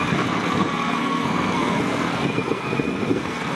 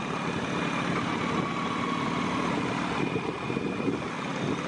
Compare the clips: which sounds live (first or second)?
second